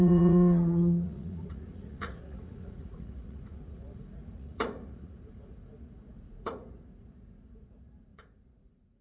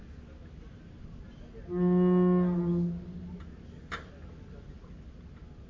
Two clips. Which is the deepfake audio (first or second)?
first